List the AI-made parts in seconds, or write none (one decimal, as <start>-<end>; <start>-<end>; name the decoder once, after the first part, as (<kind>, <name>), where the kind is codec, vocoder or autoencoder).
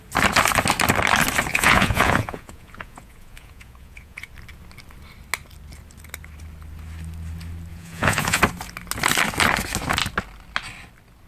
1.5-4.3 (vocoder, Vocos); 7.7-8.4